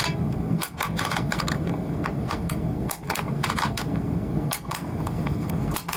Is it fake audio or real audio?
fake